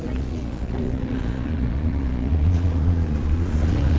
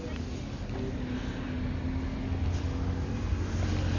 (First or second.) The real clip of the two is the second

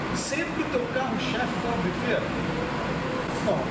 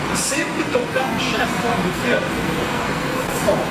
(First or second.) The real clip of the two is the first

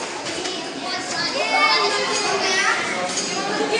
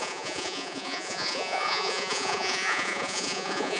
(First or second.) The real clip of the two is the first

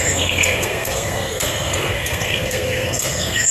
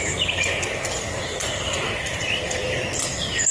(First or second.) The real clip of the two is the second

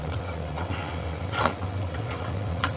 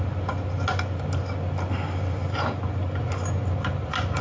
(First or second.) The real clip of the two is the second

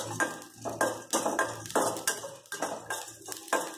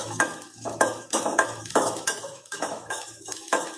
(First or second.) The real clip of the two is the first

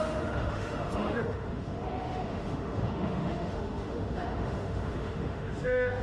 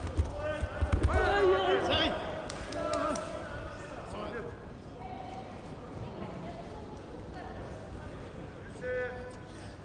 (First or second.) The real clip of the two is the second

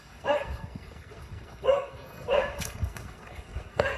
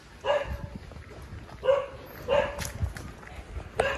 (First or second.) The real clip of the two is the second